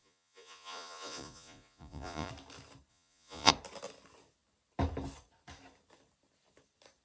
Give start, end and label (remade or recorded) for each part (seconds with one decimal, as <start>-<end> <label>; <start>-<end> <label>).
0.0-2.3 remade; 2.3-2.9 recorded; 2.9-3.5 remade; 3.5-7.0 recorded